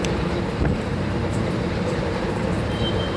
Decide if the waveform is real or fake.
fake